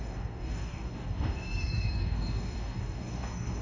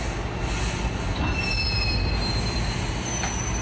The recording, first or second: second